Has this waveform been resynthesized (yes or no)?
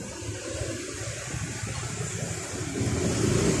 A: no